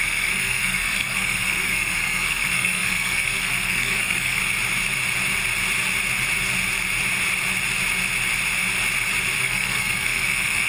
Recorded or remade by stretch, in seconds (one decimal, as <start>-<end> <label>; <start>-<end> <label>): 0.0-4.4 remade; 4.4-9.4 recorded; 9.4-10.7 remade